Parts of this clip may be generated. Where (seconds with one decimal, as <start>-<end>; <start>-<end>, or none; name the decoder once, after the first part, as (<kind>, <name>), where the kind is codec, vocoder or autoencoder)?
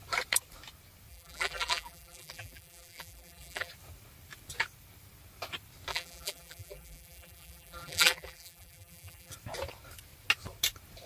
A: 1.1-3.7 (vocoder, BigVGAN v2); 5.9-9.3